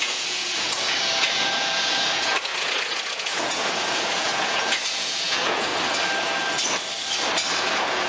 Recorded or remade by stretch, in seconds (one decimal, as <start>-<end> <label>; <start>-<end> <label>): 0.0-5.7 remade; 5.7-7.6 recorded; 7.6-8.1 remade